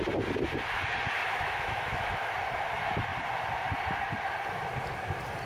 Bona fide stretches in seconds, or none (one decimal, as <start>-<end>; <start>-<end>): 0.0-1.2; 2.3-5.5